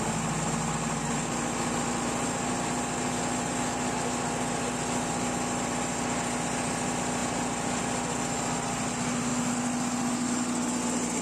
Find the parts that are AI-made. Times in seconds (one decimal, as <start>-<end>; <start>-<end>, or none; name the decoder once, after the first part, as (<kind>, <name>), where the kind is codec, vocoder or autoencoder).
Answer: none